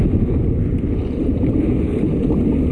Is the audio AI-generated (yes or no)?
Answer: no